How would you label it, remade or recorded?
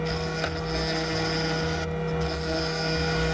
recorded